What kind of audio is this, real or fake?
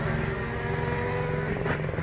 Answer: real